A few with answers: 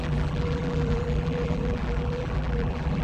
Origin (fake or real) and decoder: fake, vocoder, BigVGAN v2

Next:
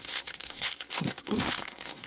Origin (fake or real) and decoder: fake, codec, SNAC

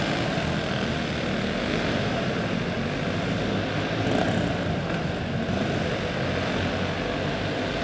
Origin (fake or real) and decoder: real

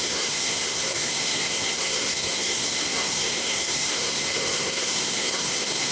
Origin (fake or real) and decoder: fake, codec, SNAC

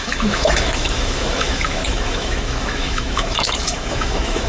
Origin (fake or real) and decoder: fake, autoencoder, DAC-VAE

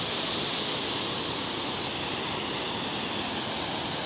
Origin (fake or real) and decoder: real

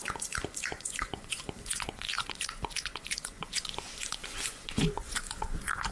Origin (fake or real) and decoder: fake, vocoder, Vocos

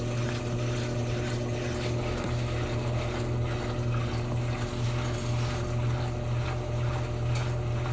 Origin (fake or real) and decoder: real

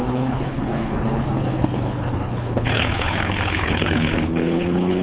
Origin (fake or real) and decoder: fake, codec, HILCodec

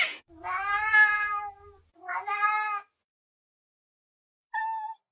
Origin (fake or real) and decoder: real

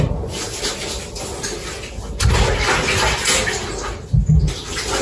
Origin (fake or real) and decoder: real